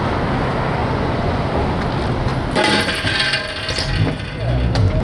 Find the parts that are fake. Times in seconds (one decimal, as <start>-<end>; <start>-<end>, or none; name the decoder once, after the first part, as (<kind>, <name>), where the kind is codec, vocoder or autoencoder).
0.8-1.4 (vocoder, Vocos)